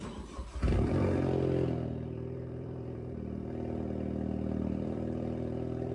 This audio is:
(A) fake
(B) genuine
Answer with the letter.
A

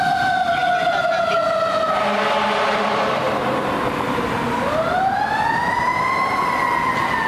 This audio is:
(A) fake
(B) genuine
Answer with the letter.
B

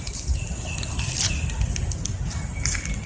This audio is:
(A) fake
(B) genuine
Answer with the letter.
B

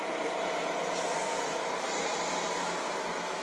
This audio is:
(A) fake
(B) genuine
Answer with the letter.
A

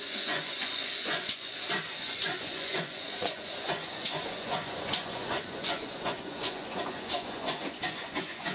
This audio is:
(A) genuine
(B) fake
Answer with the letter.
B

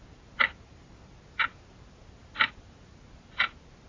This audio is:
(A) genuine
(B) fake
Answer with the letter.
A